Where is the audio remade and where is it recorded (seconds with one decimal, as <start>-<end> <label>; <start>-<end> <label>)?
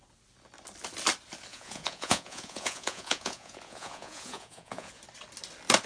0.0-1.5 recorded; 1.5-5.0 remade; 5.0-5.9 recorded